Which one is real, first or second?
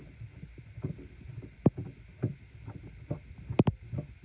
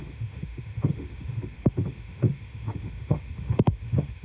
first